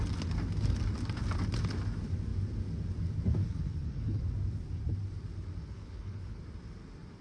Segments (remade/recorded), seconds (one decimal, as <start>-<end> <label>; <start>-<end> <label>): 0.0-3.4 recorded; 3.4-4.2 remade; 4.2-5.6 recorded; 5.6-6.4 remade; 6.4-7.2 recorded